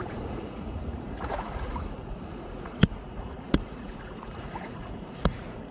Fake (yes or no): yes